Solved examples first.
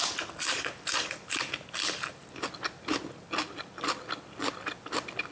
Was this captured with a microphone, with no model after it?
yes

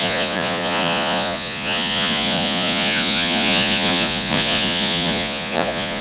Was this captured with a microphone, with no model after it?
no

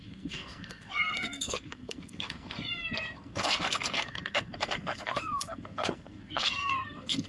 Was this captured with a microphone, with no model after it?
no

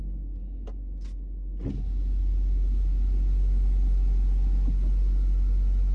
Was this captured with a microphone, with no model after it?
yes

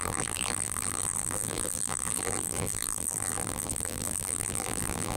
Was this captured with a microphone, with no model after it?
no